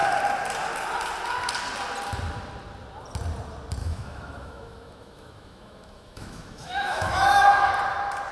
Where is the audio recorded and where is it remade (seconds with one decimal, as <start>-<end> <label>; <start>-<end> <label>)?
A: 0.0-3.8 recorded; 3.8-7.7 remade; 7.7-8.3 recorded